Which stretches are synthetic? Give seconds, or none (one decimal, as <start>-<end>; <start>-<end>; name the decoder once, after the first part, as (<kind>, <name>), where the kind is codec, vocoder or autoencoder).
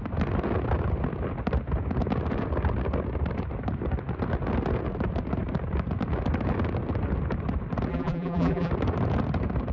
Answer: 7.9-8.7 (vocoder, BigVGAN v2)